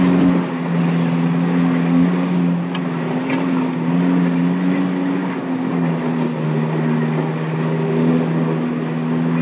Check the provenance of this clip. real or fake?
real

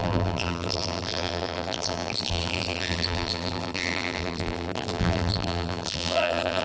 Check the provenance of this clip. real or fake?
fake